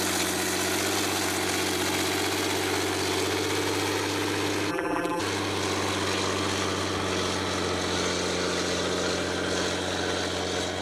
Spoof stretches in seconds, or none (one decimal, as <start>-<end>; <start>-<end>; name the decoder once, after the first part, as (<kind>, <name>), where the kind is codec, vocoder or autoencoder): 4.7-5.2 (vocoder, BigVGAN v2)